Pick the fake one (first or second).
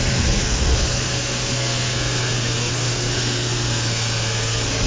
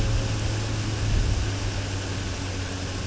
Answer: first